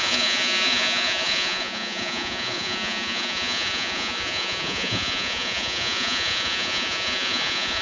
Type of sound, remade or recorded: remade